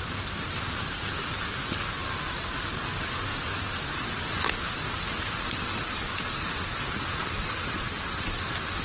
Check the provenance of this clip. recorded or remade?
recorded